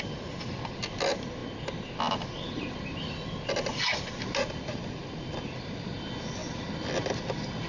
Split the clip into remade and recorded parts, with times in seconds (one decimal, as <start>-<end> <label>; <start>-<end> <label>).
0.0-7.7 recorded